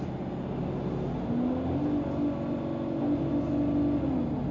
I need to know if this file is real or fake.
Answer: real